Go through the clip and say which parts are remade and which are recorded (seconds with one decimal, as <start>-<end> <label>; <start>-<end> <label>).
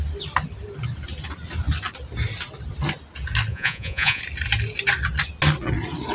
0.0-3.5 recorded; 3.5-4.2 remade; 4.2-6.1 recorded